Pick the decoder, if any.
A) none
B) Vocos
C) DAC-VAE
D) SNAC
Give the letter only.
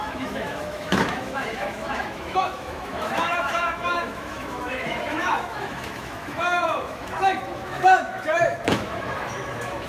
C